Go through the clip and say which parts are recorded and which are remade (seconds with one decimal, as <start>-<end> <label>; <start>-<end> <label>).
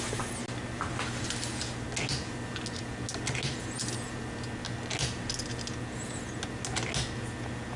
0.0-7.8 recorded